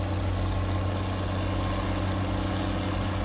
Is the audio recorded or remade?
recorded